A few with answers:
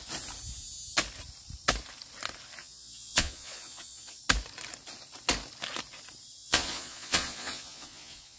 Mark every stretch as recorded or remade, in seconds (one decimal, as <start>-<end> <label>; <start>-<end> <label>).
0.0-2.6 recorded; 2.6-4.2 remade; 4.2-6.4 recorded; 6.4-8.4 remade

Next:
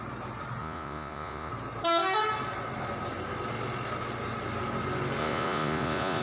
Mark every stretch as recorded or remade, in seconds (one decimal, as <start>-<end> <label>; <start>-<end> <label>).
0.0-0.6 recorded; 0.6-1.5 remade; 1.5-5.2 recorded; 5.2-6.2 remade

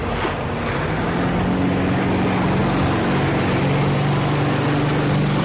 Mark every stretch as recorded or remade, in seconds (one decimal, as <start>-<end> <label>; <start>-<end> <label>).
0.0-5.4 recorded

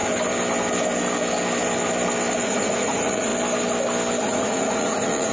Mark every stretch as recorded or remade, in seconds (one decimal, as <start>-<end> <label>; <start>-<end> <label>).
0.0-2.4 recorded; 2.4-3.3 remade; 3.3-4.2 recorded; 4.2-5.3 remade